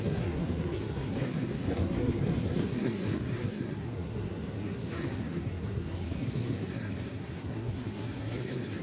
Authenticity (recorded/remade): remade